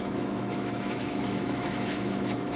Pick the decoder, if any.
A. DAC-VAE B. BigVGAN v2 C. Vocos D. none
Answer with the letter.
A